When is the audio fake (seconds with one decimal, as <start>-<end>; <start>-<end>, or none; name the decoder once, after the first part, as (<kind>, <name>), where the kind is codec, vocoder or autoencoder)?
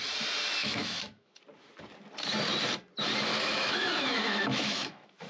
0.6-1.4 (autoencoder, DAC-VAE); 3.3-5.3